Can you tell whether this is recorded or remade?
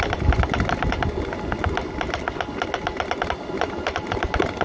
recorded